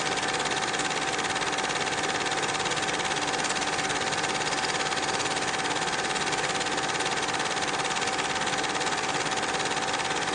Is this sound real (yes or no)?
yes